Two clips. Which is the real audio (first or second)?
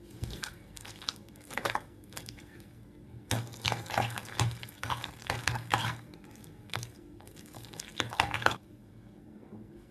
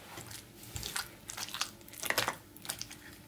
second